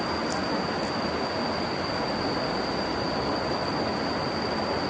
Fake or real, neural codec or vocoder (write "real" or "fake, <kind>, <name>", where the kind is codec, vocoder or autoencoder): real